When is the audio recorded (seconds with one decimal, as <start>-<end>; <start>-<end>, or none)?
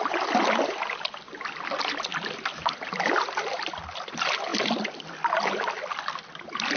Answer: 0.0-6.8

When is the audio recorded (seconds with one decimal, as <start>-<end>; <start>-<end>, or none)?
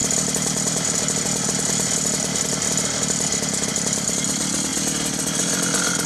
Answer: 0.0-3.7; 4.7-6.1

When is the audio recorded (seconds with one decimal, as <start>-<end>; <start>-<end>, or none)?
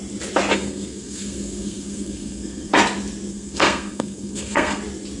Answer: 0.0-0.5; 2.7-3.3; 4.8-5.2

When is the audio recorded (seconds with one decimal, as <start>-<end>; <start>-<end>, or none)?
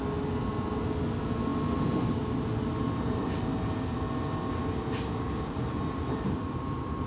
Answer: 0.0-7.1